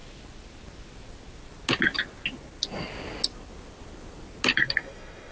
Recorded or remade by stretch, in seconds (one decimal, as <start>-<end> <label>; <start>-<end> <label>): 0.0-4.5 recorded; 4.5-5.3 remade